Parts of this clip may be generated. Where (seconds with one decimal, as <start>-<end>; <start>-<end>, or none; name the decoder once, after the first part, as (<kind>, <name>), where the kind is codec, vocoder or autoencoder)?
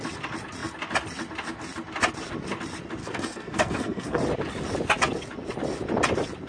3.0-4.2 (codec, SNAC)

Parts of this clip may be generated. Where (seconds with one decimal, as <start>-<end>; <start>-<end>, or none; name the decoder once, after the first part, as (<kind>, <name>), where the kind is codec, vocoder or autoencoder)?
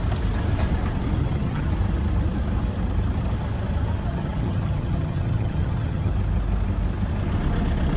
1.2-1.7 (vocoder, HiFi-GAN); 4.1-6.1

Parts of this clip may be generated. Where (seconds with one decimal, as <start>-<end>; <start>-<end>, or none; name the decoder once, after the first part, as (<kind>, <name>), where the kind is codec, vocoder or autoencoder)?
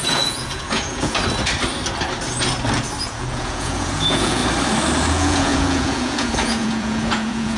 0.0-1.2 (vocoder, Vocos); 3.0-4.4; 5.1-7.6